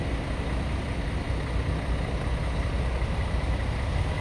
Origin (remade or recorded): recorded